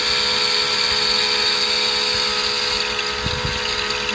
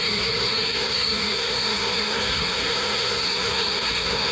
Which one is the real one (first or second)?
first